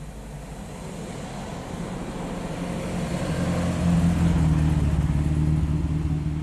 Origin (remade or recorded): recorded